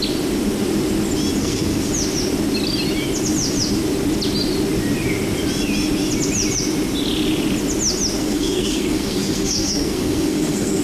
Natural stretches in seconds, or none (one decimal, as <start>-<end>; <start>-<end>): 0.0-1.4; 1.9-8.2